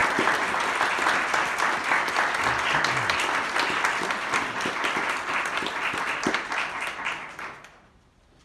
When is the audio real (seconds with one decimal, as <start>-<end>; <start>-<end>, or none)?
0.0-8.4